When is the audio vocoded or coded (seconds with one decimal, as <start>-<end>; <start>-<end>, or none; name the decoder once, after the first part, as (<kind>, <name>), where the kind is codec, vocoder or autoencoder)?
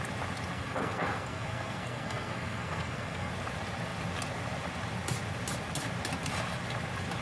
0.5-3.3 (codec, SNAC)